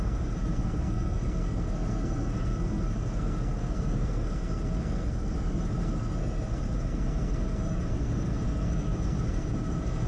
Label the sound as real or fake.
fake